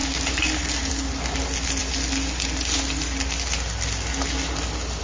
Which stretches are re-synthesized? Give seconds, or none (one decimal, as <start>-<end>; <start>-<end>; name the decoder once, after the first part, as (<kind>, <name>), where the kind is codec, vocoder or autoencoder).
none

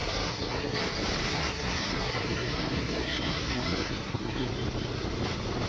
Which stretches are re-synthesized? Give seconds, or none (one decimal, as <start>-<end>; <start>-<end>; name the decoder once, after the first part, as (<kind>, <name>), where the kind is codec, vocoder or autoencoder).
0.0-0.8 (codec, SNAC); 1.3-4.5